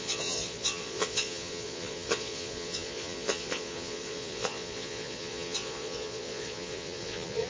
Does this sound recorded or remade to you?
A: remade